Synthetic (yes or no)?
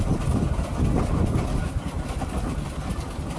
no